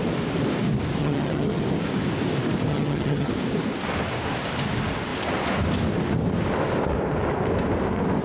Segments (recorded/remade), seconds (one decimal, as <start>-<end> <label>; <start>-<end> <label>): 0.0-1.0 recorded; 1.0-1.6 remade; 1.6-2.7 recorded; 2.7-3.3 remade; 3.3-8.2 recorded